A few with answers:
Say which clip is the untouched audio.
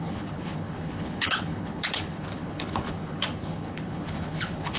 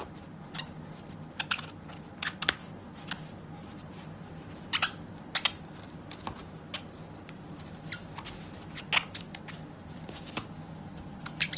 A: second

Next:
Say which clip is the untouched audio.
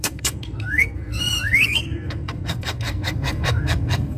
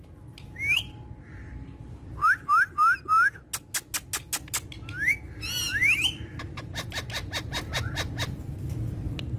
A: second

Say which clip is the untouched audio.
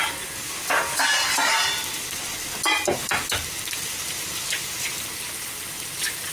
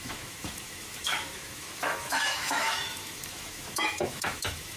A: first